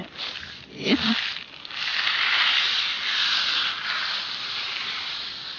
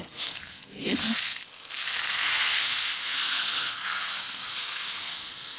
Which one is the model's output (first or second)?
second